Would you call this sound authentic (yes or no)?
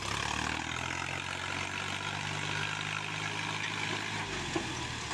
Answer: yes